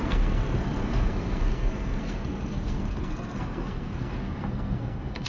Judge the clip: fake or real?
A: fake